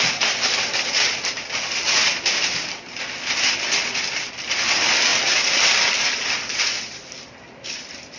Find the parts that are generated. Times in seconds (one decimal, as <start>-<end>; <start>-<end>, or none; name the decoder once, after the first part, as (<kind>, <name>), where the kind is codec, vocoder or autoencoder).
none